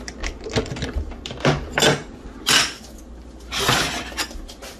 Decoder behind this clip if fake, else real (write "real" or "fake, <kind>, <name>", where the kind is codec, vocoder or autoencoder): real